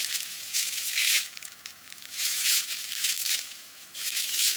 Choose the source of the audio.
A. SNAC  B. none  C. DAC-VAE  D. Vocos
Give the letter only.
C